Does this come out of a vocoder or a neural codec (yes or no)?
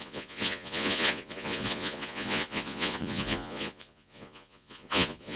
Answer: yes